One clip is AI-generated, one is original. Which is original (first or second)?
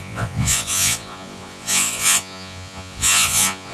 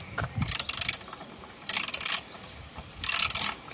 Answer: second